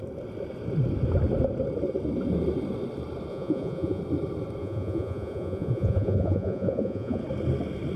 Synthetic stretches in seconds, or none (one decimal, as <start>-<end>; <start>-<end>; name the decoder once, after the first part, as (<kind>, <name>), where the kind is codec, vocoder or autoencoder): 3.3-4.0 (vocoder, Vocos); 4.6-7.2